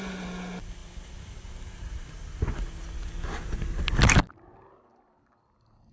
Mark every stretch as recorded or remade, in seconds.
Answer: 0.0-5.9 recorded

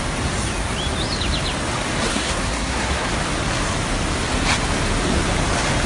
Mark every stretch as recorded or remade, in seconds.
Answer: 0.0-2.1 recorded; 2.1-3.1 remade; 3.1-5.9 recorded

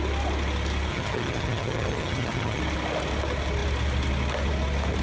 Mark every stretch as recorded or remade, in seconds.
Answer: 0.0-0.9 recorded; 0.9-2.6 remade; 2.6-5.0 recorded